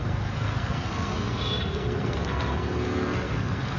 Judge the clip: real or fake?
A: fake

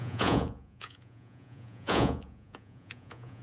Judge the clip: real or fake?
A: fake